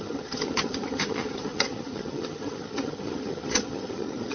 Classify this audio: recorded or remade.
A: remade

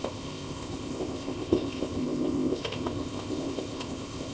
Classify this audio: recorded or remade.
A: remade